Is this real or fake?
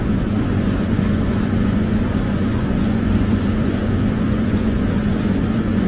fake